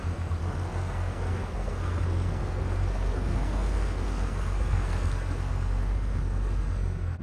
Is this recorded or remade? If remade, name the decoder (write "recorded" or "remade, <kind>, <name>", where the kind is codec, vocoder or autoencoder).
remade, codec, SNAC